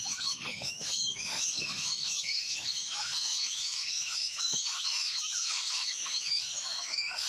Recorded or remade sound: remade